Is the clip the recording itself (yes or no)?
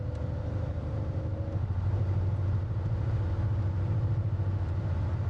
yes